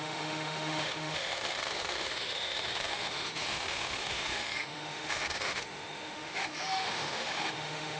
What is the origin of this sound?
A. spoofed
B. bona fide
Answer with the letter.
A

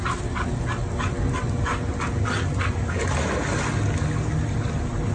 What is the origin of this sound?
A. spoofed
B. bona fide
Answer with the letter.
B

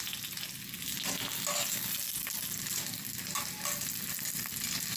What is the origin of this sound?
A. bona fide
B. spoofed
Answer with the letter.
A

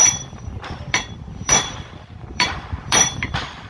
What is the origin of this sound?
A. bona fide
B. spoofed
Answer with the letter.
B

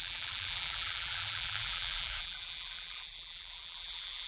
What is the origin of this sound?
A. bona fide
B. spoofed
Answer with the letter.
B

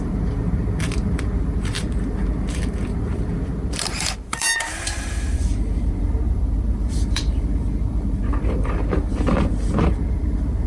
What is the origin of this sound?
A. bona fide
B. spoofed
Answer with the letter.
B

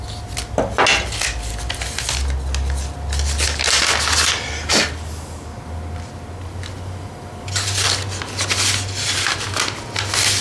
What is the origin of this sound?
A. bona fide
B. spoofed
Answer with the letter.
A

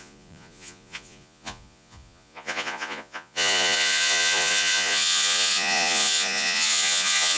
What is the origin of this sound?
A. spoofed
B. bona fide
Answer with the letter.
A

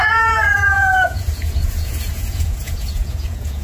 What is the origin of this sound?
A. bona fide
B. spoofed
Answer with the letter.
B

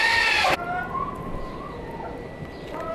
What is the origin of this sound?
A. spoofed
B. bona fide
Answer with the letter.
B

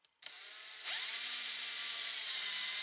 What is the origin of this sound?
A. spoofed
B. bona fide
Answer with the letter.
A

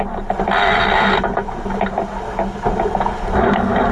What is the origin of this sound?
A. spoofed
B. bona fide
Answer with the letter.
B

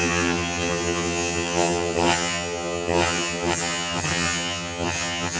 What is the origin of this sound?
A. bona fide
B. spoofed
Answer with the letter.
B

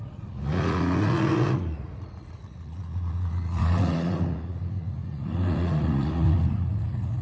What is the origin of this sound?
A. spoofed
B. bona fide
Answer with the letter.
A